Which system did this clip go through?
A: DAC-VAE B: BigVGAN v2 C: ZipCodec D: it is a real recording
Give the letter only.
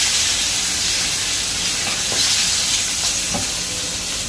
D